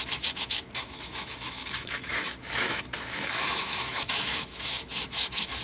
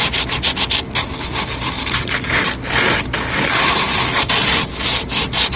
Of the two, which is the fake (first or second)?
first